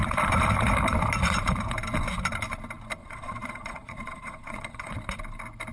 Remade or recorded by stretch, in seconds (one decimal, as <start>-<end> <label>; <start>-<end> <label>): 0.0-3.0 recorded; 3.0-4.9 remade; 4.9-5.7 recorded